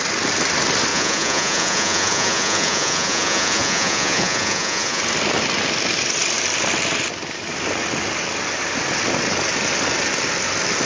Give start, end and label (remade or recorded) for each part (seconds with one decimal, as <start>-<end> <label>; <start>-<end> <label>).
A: 0.0-0.9 recorded; 0.9-5.0 remade; 5.0-10.9 recorded